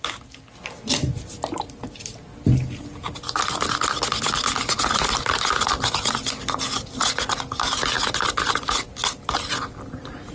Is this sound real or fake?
real